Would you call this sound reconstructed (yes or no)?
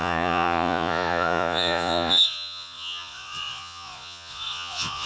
yes